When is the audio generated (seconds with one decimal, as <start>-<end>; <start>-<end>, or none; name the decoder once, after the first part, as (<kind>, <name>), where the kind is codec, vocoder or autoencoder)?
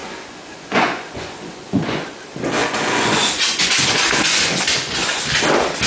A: 0.0-2.2 (vocoder, Vocos); 2.6-5.2